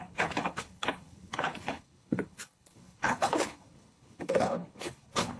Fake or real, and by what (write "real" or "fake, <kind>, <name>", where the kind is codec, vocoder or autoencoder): fake, codec, HILCodec